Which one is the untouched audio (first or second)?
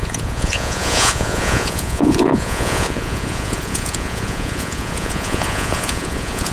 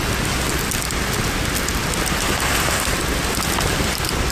second